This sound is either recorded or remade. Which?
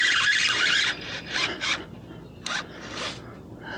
remade